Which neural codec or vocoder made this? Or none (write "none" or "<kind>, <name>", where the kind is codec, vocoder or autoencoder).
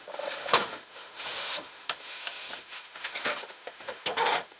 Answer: autoencoder, DAC-VAE